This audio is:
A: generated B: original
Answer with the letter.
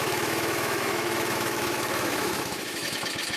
A